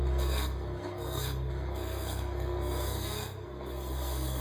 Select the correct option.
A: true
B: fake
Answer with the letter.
B